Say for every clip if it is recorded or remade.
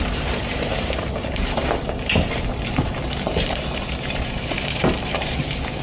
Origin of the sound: remade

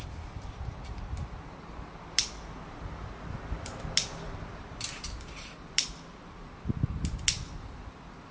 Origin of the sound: recorded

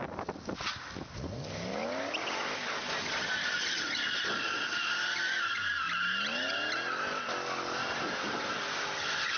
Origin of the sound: recorded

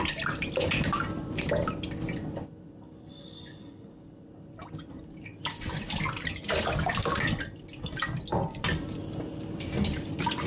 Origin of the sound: remade